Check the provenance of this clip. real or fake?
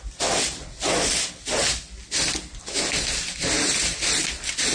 real